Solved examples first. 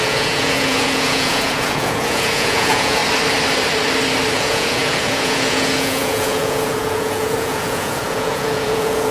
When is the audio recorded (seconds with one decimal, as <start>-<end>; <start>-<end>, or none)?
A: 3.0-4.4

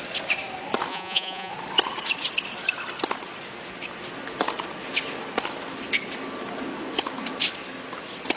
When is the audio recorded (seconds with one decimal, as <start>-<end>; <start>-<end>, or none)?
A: 0.0-0.9; 1.5-8.4

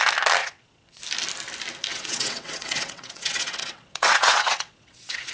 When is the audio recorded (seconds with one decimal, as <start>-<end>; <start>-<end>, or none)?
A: 0.0-0.4; 1.0-1.9

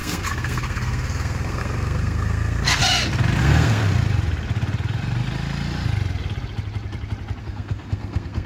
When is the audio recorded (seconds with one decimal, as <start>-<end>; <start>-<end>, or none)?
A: 2.8-3.4; 3.8-7.4

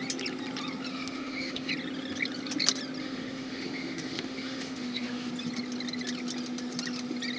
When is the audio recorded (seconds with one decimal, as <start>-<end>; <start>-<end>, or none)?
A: 0.0-0.9; 1.7-3.0; 5.3-7.4

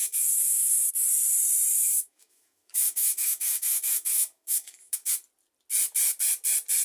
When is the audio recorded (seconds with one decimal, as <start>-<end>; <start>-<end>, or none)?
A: 0.9-1.7; 5.1-6.8

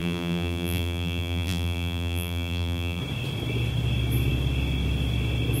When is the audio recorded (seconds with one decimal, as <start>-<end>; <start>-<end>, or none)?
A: 3.0-5.6

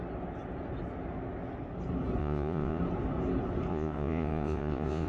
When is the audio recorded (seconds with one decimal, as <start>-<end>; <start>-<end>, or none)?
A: 0.0-2.2; 2.8-3.7